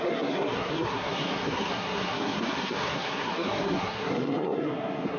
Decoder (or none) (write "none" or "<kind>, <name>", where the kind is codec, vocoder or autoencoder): codec, SNAC